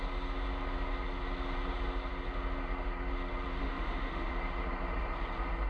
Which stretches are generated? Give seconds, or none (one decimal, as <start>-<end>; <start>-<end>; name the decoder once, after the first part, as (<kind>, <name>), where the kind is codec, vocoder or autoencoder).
3.6-4.3 (autoencoder, DAC-VAE)